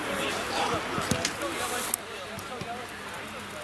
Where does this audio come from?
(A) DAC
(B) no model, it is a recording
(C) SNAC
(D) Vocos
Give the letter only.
B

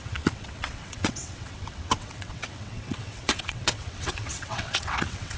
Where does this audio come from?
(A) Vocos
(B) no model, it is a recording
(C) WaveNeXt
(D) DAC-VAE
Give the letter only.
C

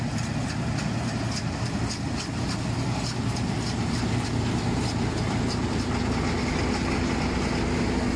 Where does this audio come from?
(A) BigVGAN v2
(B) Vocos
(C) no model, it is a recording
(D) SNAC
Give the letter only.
C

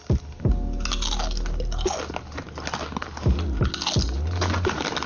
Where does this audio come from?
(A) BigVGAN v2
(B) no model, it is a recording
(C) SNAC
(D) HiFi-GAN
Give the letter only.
B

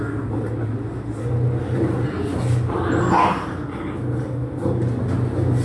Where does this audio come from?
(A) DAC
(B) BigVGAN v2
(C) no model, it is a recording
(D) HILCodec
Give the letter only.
C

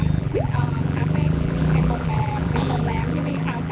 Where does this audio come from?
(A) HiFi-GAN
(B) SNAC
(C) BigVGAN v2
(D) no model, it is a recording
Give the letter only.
C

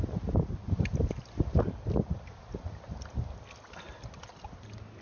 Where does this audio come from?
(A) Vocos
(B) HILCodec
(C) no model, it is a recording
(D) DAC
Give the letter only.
C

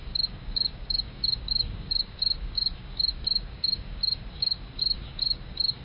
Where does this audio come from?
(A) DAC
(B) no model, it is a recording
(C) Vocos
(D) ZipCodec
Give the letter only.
A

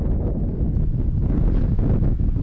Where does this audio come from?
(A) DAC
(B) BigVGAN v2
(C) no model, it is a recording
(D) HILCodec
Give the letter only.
C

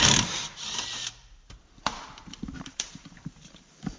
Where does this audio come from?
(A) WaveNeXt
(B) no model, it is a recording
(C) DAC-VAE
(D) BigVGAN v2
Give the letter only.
D